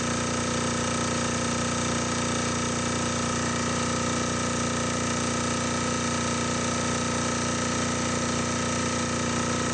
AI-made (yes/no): no